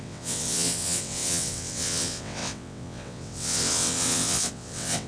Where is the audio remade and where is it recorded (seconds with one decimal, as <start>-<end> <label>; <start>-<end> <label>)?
0.0-5.1 remade